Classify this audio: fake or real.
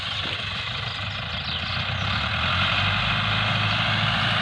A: real